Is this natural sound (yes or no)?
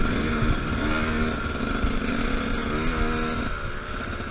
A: yes